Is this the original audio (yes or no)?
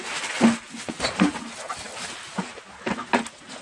yes